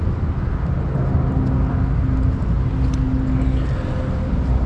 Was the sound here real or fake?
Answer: real